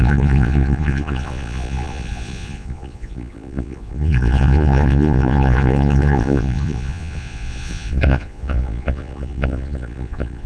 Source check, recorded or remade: remade